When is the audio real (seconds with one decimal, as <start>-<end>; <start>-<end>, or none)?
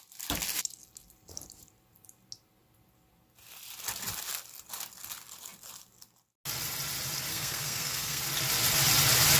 0.0-7.3; 8.2-9.4